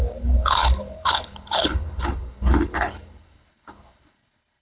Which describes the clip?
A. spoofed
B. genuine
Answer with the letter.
A